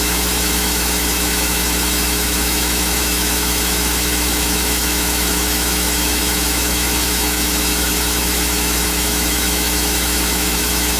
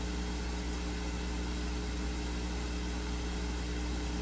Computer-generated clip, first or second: first